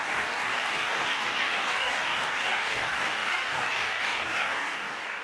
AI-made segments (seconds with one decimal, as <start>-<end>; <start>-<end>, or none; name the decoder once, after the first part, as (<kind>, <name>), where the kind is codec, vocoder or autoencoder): 0.0-5.2 (codec, DAC)